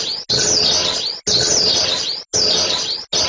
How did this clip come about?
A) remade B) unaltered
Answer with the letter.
B